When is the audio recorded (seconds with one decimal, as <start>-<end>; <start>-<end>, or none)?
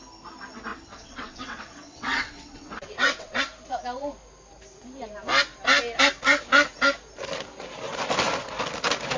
0.0-0.7; 3.4-9.2